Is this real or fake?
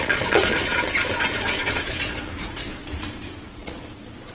fake